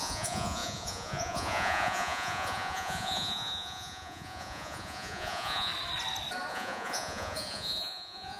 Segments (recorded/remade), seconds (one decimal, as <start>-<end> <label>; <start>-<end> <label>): 0.0-5.7 remade; 5.7-6.5 recorded; 6.5-8.4 remade